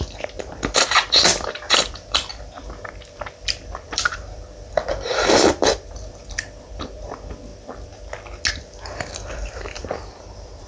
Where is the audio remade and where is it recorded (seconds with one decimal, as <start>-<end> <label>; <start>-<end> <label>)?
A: 0.0-6.2 remade; 6.2-6.7 recorded; 6.7-7.5 remade; 7.5-8.5 recorded; 8.5-10.7 remade